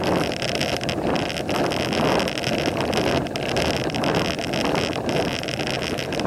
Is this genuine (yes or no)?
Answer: yes